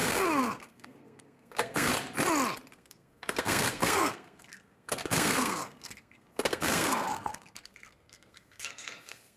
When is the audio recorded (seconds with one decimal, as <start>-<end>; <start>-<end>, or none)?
1.9-2.7